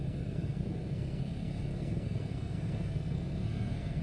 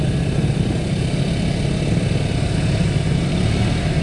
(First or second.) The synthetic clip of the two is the first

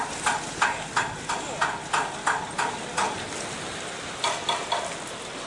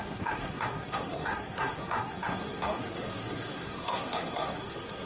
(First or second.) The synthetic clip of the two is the second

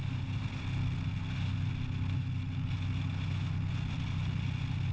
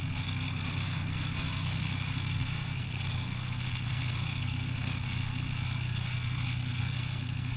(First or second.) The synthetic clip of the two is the second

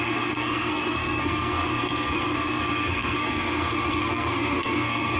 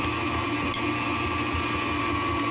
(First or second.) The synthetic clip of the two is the first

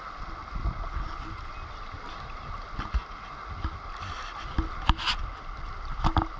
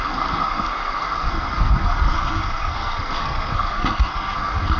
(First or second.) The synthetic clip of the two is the second